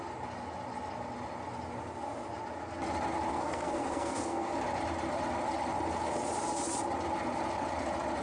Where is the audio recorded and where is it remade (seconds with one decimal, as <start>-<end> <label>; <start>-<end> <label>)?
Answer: 0.0-3.3 recorded; 3.3-4.6 remade; 4.6-8.2 recorded